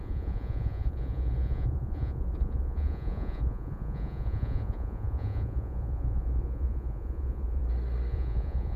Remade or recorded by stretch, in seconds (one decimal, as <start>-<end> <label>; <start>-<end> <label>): 0.0-7.6 remade; 7.6-8.1 recorded; 8.1-8.8 remade